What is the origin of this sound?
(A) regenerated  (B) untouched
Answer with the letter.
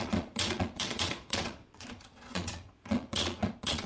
A